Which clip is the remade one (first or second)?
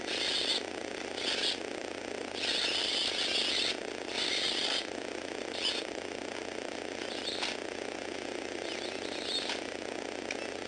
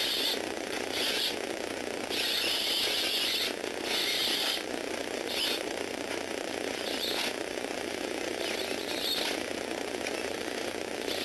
second